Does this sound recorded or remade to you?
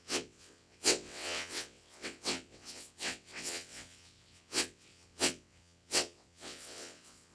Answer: remade